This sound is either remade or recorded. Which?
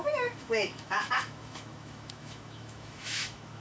remade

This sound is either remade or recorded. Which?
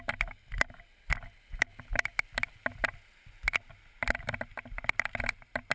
recorded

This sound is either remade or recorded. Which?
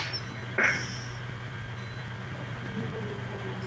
recorded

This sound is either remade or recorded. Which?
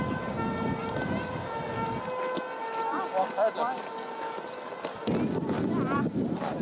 recorded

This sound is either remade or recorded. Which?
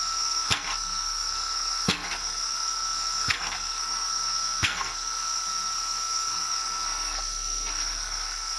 remade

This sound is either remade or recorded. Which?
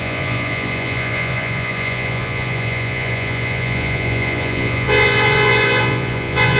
remade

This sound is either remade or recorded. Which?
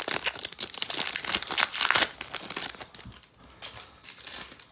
recorded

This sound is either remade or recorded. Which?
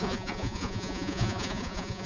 remade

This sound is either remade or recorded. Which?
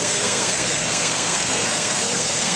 remade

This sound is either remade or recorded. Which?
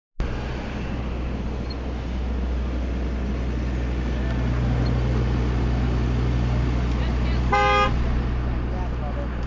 recorded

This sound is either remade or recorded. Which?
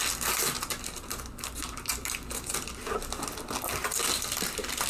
recorded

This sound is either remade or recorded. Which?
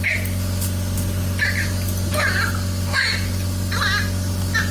recorded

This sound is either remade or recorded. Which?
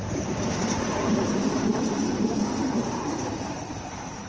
remade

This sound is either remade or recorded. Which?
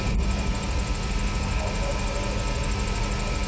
recorded